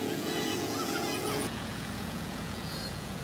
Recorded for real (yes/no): no